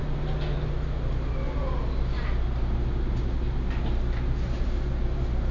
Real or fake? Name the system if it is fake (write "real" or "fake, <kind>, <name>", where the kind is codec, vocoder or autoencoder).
real